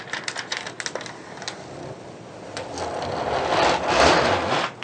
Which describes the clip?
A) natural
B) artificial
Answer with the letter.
A